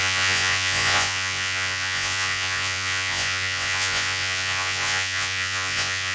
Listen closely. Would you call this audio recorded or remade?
remade